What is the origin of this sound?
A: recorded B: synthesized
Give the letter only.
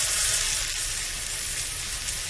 A